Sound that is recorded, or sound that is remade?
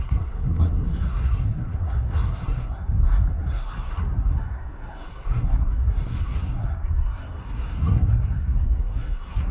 remade